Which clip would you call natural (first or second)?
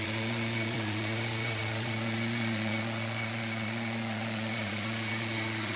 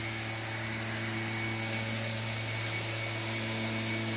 second